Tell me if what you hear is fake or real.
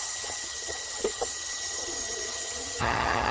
fake